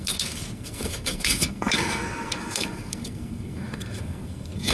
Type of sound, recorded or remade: remade